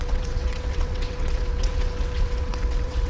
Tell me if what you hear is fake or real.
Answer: fake